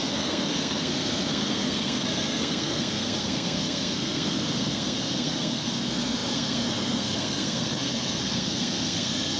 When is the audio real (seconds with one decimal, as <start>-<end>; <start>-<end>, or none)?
none